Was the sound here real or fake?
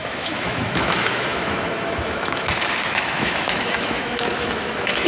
fake